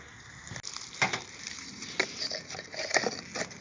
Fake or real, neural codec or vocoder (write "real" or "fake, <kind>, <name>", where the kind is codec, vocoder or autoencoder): real